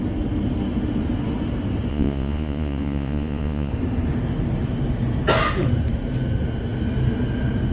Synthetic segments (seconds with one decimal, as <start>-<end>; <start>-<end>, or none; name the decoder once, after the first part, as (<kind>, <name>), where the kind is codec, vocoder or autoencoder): 1.9-3.7 (vocoder, Vocos)